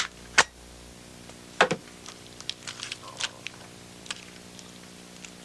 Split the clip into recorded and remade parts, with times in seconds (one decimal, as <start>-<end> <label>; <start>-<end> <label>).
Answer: 0.0-5.4 recorded